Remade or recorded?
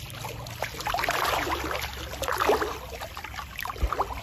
recorded